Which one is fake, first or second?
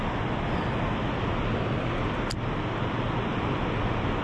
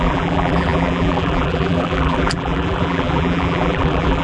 second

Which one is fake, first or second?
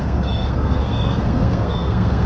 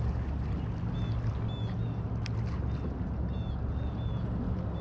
first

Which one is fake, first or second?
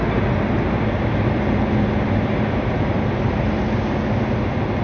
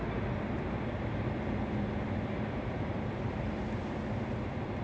second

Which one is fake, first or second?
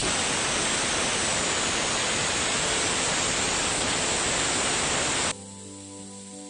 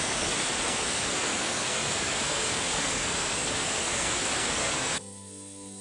second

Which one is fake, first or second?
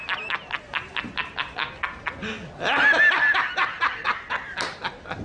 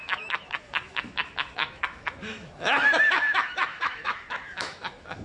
second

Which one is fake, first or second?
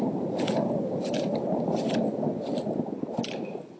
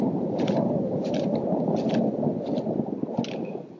second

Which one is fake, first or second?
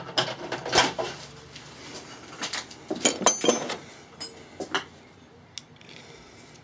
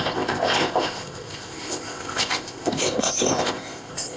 second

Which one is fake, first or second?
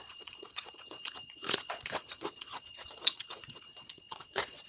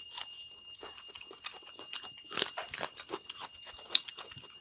first